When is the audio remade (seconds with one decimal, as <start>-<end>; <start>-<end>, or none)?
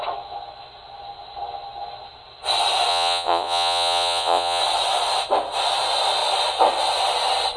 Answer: 2.9-4.6